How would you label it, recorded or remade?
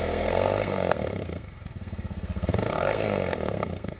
remade